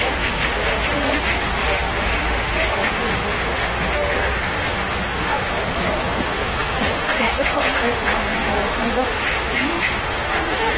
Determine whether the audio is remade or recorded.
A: remade